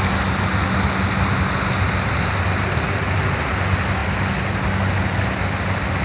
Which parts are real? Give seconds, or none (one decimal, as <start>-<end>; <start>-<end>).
0.0-6.0